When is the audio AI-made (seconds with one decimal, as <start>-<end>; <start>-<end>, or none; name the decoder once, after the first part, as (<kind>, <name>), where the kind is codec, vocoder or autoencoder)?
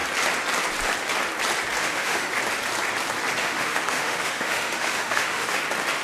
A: 1.8-2.3 (autoencoder, DAC-VAE); 3.4-5.6